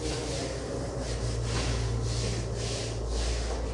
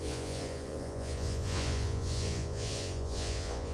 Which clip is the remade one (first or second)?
second